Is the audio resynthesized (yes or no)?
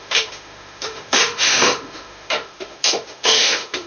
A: yes